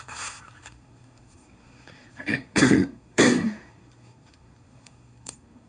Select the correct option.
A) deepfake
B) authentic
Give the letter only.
A